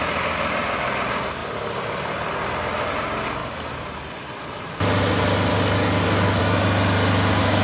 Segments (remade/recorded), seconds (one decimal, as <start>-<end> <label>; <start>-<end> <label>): 0.0-5.5 recorded; 5.5-6.4 remade; 6.4-7.6 recorded